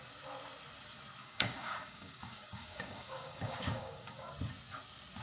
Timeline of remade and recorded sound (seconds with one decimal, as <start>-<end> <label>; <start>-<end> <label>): 0.0-1.2 recorded; 1.2-4.3 remade; 4.3-5.2 recorded